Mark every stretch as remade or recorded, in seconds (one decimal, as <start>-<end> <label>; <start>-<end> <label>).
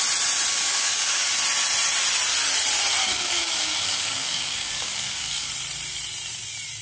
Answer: 0.0-0.5 recorded; 0.5-1.3 remade; 1.3-3.0 recorded; 3.0-5.5 remade; 5.5-6.8 recorded